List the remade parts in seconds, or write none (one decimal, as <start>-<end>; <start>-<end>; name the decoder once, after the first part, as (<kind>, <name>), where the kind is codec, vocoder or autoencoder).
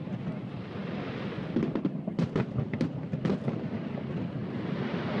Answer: none